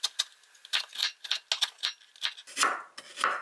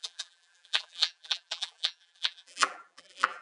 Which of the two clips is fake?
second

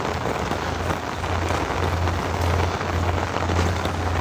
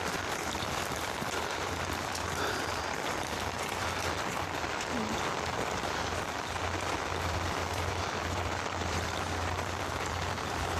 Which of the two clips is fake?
second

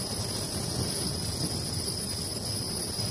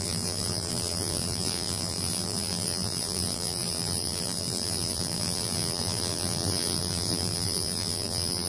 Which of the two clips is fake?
second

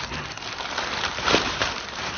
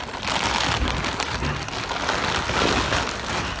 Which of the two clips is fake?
first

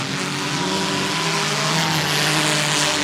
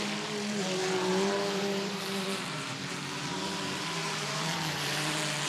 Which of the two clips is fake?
second